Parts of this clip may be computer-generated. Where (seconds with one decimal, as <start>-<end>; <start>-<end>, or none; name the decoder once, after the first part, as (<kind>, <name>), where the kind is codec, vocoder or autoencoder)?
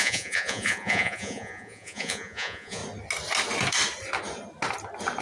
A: 0.0-2.8 (vocoder, Vocos)